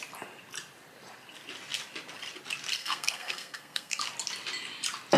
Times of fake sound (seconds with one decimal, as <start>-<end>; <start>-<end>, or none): 2.8-4.0